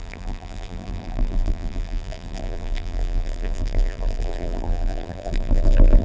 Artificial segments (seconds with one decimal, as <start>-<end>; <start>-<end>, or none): 0.0-6.0